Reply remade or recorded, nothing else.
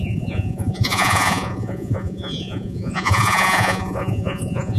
remade